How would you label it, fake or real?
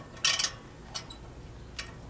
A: real